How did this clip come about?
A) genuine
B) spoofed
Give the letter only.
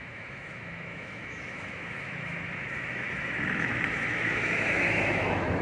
B